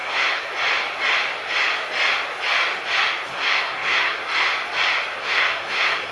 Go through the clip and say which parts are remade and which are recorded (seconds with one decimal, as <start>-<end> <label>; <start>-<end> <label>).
0.0-0.5 remade; 0.5-3.3 recorded; 3.3-4.2 remade; 4.2-5.2 recorded; 5.2-6.1 remade